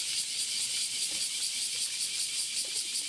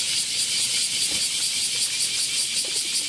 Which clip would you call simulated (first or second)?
first